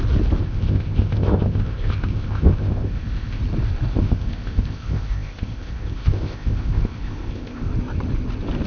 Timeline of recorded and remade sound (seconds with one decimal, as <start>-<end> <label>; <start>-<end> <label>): 0.0-0.4 recorded; 0.4-3.4 remade; 3.4-3.9 recorded; 3.9-7.7 remade; 7.7-8.7 recorded